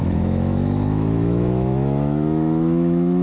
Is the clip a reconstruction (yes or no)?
yes